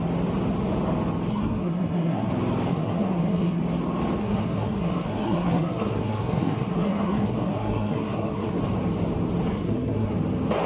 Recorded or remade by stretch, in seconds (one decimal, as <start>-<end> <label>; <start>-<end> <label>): 0.0-1.3 recorded; 1.3-2.3 remade; 2.3-2.7 recorded; 2.7-3.6 remade; 3.6-4.2 recorded; 4.2-8.6 remade; 8.6-9.5 recorded; 9.5-10.1 remade; 10.1-10.7 recorded